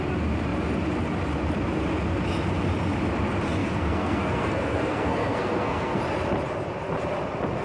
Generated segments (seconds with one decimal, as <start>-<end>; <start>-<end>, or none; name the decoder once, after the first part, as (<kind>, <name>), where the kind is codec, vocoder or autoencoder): 3.6-6.0 (codec, SNAC)